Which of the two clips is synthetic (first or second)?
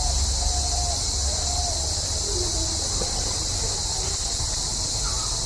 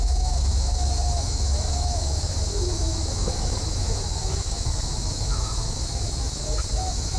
second